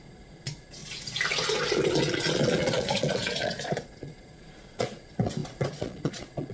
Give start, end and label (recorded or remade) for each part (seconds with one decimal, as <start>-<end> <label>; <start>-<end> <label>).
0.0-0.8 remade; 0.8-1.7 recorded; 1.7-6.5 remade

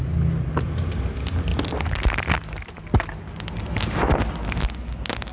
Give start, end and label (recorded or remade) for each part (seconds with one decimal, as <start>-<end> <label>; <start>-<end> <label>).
0.0-5.3 recorded

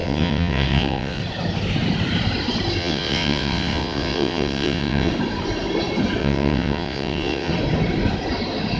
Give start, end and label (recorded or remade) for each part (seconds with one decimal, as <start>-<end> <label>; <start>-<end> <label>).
0.0-1.2 remade; 1.2-2.8 recorded; 2.8-5.1 remade; 5.1-6.2 recorded; 6.2-7.5 remade; 7.5-8.8 recorded

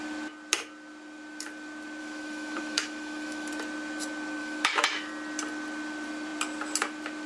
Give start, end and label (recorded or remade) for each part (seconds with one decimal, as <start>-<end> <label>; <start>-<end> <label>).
0.0-2.0 recorded; 2.0-3.5 remade; 3.5-4.4 recorded; 4.4-5.1 remade; 5.1-7.3 recorded

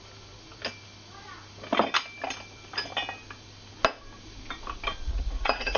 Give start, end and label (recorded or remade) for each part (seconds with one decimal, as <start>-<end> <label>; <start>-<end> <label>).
0.0-4.9 recorded; 4.9-5.8 remade

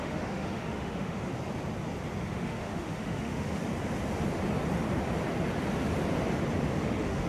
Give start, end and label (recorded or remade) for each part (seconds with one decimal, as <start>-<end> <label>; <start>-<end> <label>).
0.0-1.3 remade; 1.3-2.2 recorded; 2.2-3.6 remade; 3.6-6.8 recorded; 6.8-7.3 remade

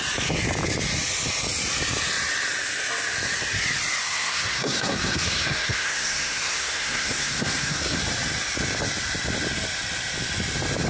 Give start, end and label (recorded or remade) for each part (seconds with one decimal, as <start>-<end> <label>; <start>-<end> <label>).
0.0-4.0 recorded; 4.0-8.0 remade; 8.0-10.9 recorded